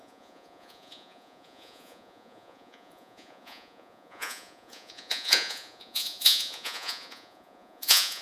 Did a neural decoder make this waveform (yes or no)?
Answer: yes